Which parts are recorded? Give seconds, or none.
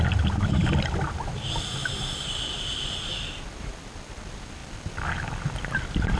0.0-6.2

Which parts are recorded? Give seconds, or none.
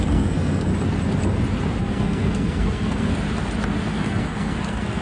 0.7-1.8; 3.1-3.9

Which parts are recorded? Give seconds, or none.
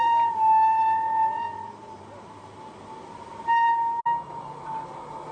0.0-5.3